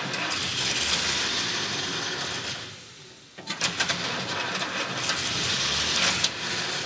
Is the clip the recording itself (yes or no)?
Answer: yes